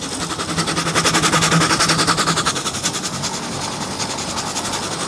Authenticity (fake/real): real